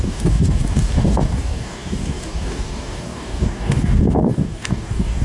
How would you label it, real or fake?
fake